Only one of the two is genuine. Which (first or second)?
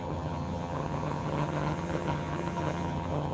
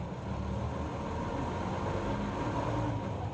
second